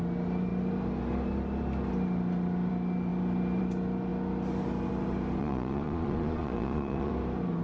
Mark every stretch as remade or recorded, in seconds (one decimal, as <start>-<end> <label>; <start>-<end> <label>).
0.0-5.4 recorded; 5.4-7.1 remade; 7.1-7.6 recorded